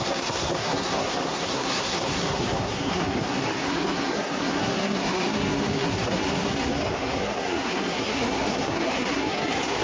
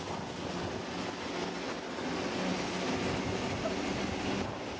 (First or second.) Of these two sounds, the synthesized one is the first